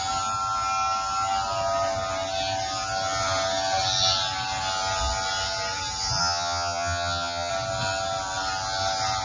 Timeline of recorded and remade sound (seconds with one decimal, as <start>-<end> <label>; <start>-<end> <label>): 0.0-6.2 recorded; 6.2-7.5 remade; 7.5-9.2 recorded